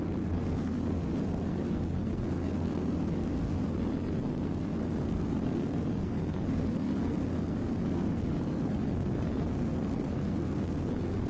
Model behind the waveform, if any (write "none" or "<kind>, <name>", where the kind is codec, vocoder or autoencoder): codec, SNAC